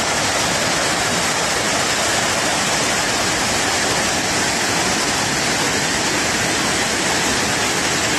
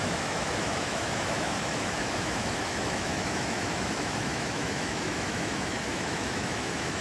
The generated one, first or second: second